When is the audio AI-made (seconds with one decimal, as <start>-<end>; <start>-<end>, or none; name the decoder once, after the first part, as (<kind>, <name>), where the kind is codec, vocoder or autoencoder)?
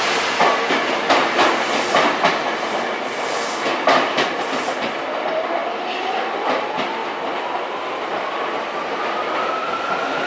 none